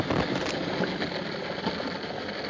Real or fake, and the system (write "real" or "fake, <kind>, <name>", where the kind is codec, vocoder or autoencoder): real